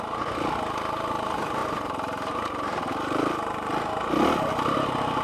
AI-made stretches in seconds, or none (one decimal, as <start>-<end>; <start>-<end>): none